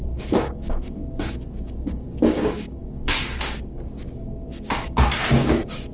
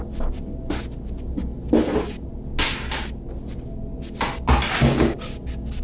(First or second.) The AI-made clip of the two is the first